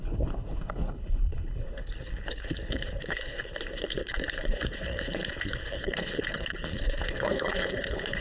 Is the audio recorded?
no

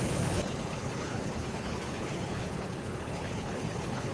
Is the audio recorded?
no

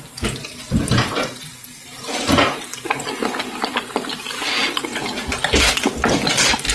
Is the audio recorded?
yes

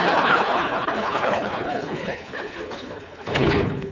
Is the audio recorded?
no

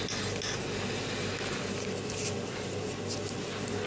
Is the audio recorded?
yes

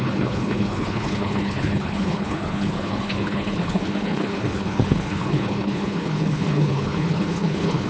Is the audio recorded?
no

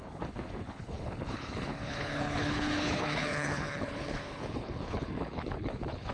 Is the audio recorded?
no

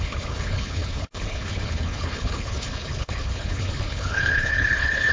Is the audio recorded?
no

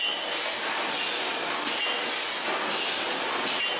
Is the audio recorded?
yes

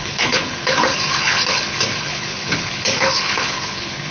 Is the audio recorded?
no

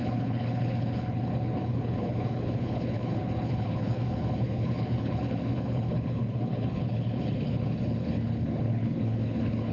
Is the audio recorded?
no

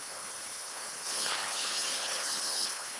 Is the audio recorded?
no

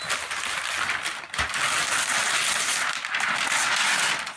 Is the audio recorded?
yes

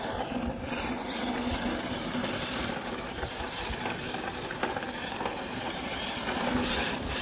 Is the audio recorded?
yes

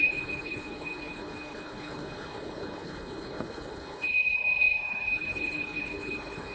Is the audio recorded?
no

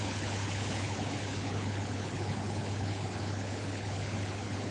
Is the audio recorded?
no